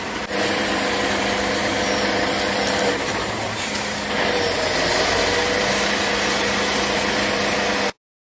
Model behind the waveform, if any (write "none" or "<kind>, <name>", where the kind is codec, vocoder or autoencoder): none